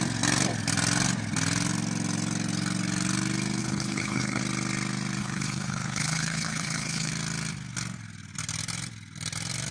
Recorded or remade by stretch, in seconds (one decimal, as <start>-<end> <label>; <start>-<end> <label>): 0.0-3.6 recorded; 3.6-4.4 remade; 4.4-5.2 recorded; 5.2-7.1 remade; 7.1-9.7 recorded